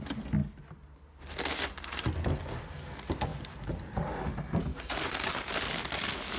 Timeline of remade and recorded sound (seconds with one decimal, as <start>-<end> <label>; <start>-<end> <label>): 0.0-3.3 recorded; 3.3-4.0 remade; 4.0-4.7 recorded; 4.7-5.5 remade; 5.5-6.4 recorded